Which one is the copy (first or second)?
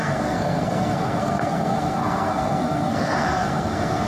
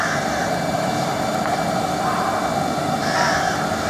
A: first